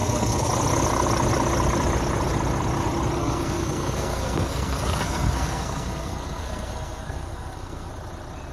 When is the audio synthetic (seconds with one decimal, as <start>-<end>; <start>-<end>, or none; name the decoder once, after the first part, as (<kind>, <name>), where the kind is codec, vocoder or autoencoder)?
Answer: 0.0-0.5 (codec, SNAC); 3.2-7.9